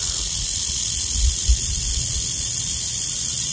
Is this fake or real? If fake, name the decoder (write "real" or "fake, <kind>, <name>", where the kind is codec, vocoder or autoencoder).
real